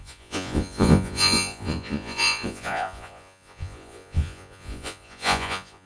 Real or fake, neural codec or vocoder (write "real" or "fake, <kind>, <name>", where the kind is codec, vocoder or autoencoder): fake, vocoder, Vocos